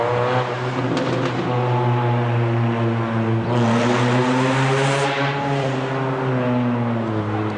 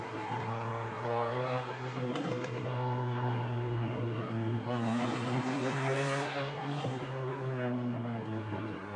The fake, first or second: second